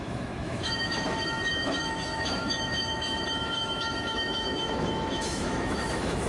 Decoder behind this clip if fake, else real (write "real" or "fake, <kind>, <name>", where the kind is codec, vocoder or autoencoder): fake, autoencoder, DAC-VAE